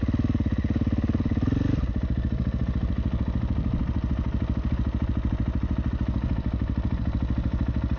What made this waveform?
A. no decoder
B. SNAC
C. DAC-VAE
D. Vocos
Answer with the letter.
A